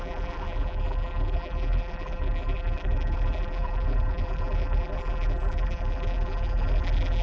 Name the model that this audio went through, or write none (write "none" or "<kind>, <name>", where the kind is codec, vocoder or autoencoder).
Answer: vocoder, BigVGAN v2